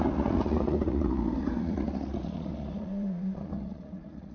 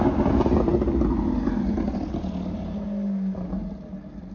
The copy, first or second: first